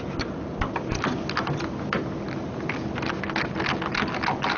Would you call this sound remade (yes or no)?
no